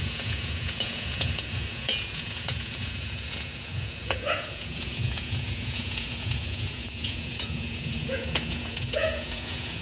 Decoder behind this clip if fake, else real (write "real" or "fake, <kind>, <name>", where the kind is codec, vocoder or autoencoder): fake, vocoder, Vocos